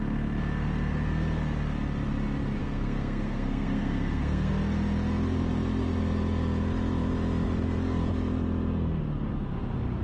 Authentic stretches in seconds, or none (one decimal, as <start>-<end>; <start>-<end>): 0.0-2.6; 4.5-10.0